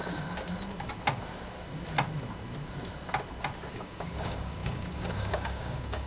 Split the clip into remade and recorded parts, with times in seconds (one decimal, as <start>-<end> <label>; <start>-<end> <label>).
0.0-3.7 recorded; 3.7-6.1 remade

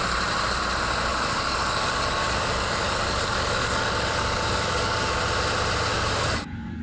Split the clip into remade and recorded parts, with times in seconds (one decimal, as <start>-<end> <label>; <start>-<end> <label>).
0.0-1.1 recorded; 1.1-5.2 remade; 5.2-5.9 recorded; 5.9-6.8 remade

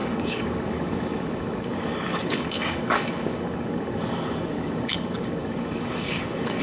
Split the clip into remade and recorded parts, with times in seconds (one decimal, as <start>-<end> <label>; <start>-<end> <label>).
0.0-6.6 remade